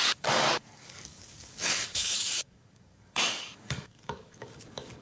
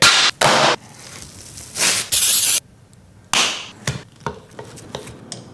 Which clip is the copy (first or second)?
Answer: first